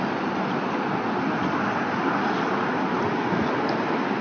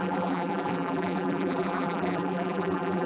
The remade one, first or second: second